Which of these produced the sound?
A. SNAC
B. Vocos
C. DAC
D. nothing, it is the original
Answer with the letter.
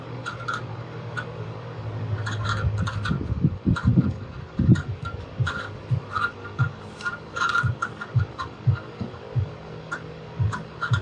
C